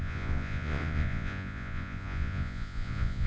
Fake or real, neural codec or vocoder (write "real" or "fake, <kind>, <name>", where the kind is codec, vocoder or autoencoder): fake, vocoder, Vocos